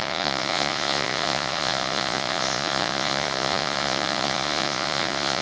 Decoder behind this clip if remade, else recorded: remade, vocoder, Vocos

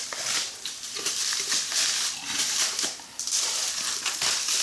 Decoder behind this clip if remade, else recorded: remade, vocoder, BigVGAN v2